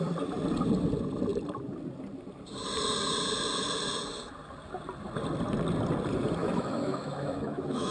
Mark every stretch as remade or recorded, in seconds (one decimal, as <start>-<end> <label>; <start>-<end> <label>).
0.0-6.4 recorded; 6.4-7.9 remade